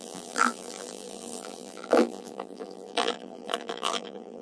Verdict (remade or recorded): remade